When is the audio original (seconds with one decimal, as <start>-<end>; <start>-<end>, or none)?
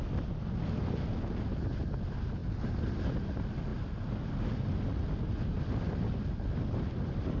0.0-7.4